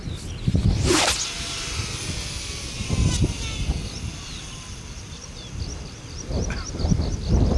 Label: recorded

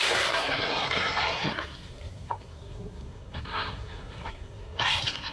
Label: remade